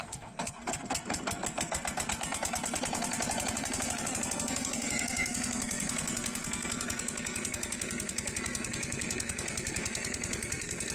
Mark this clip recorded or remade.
remade